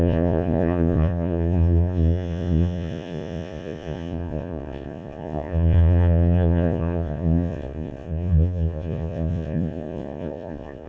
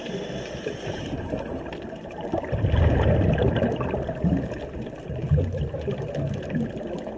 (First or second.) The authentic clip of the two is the second